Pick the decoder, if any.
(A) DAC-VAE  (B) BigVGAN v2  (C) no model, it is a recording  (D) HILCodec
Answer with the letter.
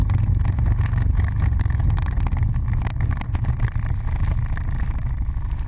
C